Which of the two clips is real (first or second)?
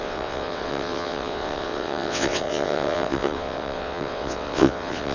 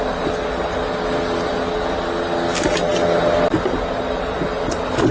second